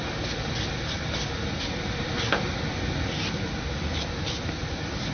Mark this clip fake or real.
fake